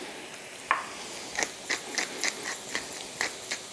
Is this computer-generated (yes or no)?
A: no